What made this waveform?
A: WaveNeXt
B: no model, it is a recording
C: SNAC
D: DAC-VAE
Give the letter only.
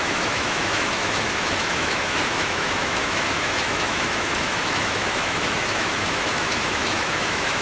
D